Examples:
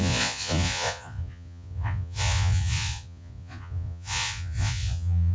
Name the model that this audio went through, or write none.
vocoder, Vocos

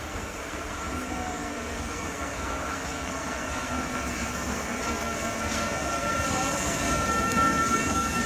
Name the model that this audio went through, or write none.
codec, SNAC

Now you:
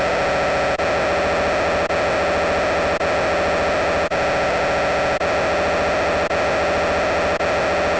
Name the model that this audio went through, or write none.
none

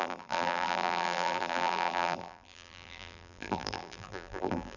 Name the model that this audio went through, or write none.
vocoder, BigVGAN v2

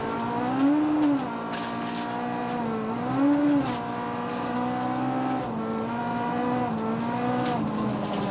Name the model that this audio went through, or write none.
none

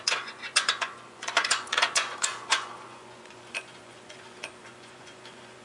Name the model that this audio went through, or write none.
vocoder, Vocos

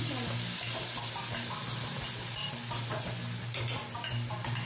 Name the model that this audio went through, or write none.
none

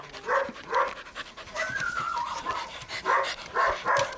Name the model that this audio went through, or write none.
none